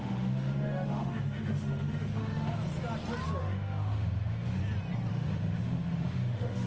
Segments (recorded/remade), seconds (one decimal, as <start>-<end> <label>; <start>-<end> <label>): 0.0-2.5 remade; 2.5-3.4 recorded; 3.4-4.6 remade; 4.6-5.1 recorded; 5.1-6.7 remade